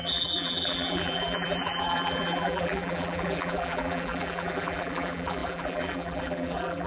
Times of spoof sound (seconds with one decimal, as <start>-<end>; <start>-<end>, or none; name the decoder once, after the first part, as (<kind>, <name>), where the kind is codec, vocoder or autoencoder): 0.0-6.9 (vocoder, BigVGAN v2)